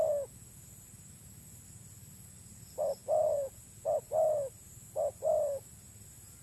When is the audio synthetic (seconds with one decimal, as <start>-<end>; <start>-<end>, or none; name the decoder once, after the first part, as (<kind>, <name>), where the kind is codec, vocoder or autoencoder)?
3.0-3.6 (vocoder, Vocos)

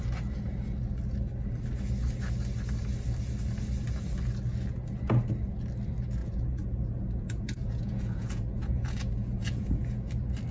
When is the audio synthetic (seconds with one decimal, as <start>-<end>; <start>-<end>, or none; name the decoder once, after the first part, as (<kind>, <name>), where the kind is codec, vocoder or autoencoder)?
6.2-10.1 (vocoder, Vocos)